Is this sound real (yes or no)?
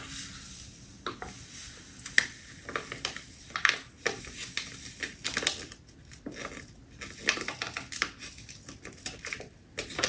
yes